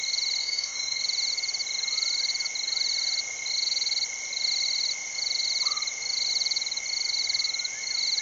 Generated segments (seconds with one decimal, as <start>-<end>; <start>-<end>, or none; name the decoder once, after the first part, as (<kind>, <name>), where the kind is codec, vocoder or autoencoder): 0.4-1.0 (autoencoder, DAC-VAE)